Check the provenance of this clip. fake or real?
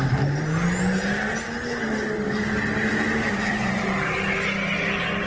real